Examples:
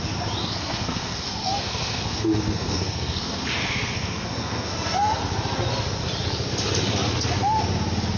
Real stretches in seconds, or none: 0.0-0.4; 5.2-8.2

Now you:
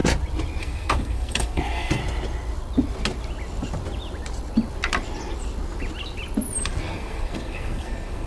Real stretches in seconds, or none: 0.0-0.6; 2.0-6.8

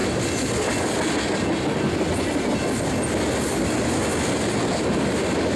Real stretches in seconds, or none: 0.0-5.6